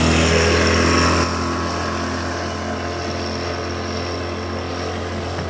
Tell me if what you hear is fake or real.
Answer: real